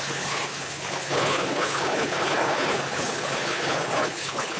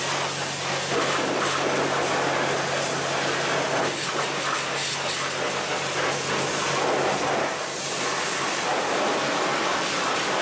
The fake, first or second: first